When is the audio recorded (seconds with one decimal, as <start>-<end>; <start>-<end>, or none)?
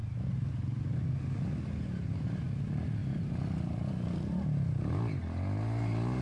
0.0-6.2